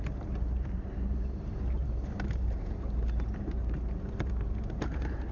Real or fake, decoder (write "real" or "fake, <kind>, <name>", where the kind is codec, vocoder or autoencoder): fake, vocoder, BigVGAN v2